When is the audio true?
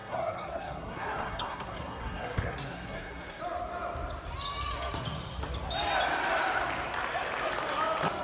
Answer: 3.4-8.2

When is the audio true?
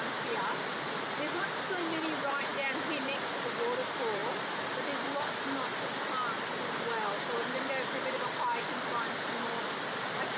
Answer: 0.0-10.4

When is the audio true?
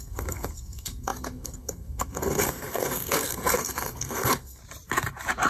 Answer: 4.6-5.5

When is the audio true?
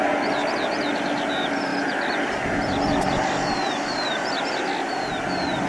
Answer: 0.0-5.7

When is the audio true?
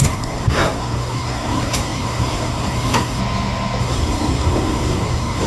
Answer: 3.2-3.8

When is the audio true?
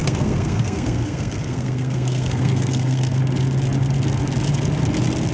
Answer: 3.2-5.3